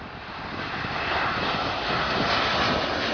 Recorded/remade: recorded